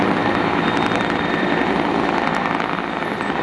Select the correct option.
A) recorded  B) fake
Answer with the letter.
A